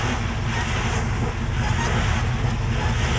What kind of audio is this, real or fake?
real